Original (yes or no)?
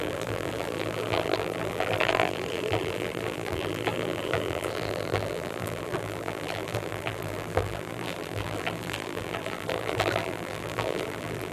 no